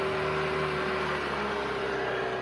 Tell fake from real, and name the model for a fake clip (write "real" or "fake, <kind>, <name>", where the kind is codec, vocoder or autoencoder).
real